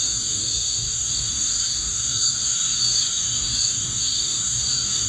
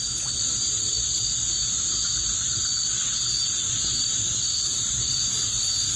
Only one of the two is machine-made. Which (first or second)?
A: first